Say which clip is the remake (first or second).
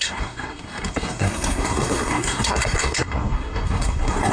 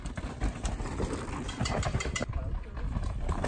first